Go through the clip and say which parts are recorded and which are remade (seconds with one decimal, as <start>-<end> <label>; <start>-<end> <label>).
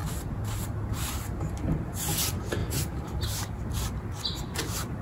0.0-2.6 recorded; 2.6-3.5 remade; 3.5-5.0 recorded